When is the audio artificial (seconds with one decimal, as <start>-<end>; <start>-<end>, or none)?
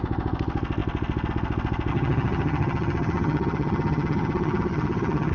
1.9-5.3